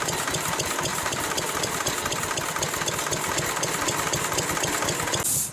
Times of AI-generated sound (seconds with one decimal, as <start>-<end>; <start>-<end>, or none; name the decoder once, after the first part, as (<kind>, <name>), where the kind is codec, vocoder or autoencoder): 0.9-1.8 (vocoder, BigVGAN v2)

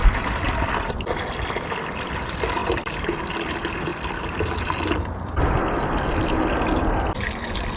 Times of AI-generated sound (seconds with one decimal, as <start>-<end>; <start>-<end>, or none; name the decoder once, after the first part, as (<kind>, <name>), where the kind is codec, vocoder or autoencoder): 2.6-3.2 (vocoder, BigVGAN v2)